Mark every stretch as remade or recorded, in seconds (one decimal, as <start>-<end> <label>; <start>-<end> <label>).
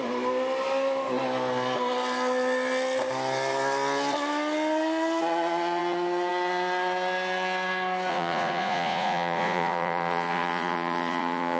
0.0-8.1 recorded; 8.1-11.6 remade